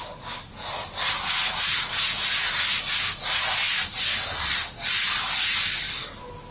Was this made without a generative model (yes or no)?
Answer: yes